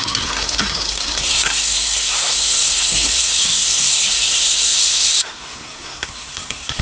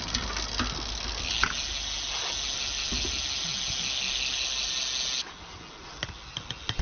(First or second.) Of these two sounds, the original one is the second